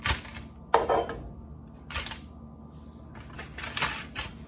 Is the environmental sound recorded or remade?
recorded